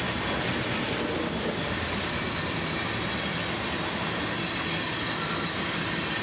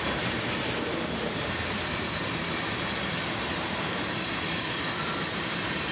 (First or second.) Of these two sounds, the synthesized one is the second